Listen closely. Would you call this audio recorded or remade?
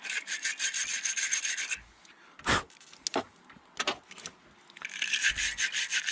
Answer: recorded